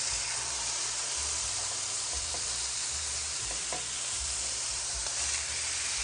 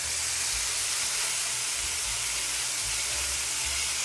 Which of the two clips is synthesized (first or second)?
first